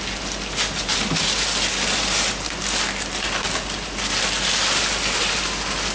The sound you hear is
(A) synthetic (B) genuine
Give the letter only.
B